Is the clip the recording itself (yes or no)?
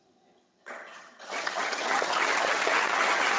no